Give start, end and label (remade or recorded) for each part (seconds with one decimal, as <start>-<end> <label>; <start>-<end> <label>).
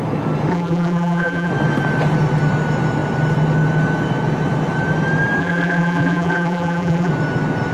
0.0-0.5 recorded; 0.5-1.5 remade; 1.5-5.4 recorded; 5.4-7.1 remade; 7.1-7.7 recorded